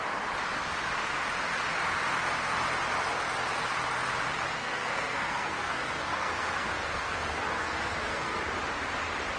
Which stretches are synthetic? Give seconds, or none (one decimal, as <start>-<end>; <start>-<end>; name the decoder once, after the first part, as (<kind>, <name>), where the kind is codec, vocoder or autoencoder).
4.6-8.4 (codec, SNAC)